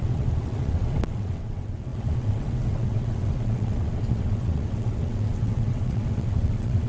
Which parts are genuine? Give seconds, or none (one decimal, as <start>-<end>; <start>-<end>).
none